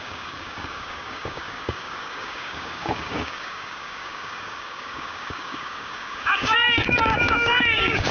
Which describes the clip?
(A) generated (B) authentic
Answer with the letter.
A